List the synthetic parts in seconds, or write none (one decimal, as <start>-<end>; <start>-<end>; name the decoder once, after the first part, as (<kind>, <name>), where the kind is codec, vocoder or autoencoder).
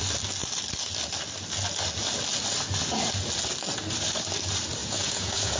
4.8-5.6 (vocoder, Vocos)